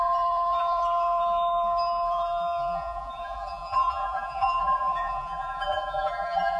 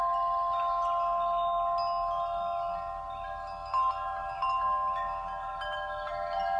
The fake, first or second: first